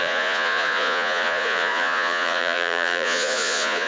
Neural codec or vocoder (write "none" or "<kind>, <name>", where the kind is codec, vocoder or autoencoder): vocoder, Vocos